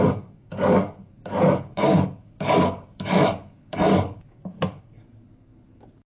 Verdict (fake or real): fake